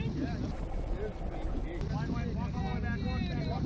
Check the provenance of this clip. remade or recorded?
recorded